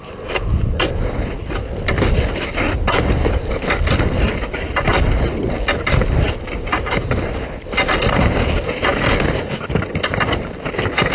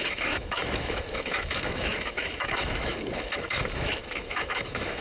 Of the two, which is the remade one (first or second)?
second